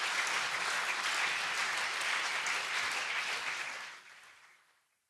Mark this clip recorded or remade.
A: recorded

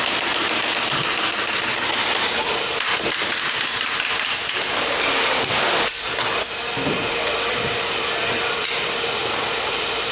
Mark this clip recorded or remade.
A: recorded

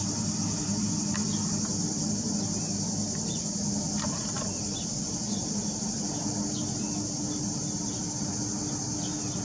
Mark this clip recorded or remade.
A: recorded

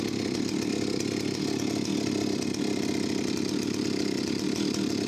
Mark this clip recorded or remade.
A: recorded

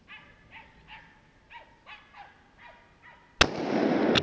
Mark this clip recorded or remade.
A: recorded